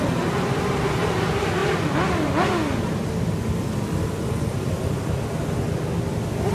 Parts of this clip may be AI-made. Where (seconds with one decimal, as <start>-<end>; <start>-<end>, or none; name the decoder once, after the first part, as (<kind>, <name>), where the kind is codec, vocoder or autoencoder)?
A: none